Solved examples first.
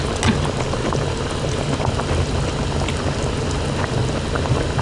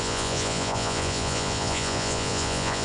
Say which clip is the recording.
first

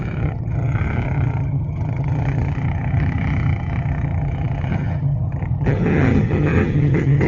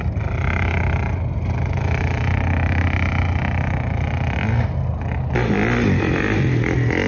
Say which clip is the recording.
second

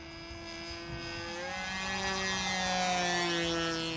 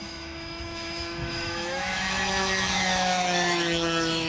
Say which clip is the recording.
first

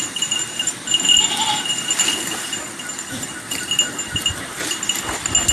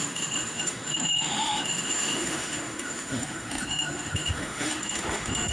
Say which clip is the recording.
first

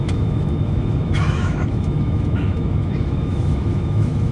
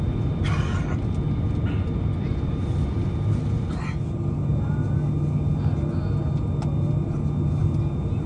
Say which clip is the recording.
second